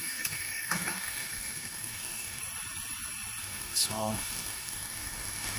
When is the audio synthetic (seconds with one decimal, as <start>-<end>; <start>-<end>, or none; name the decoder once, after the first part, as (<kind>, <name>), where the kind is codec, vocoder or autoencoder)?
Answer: 0.0-2.4 (codec, DAC); 3.4-5.6